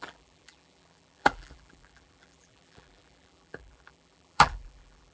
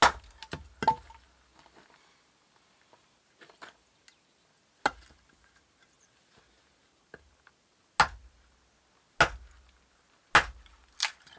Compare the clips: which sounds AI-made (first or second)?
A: first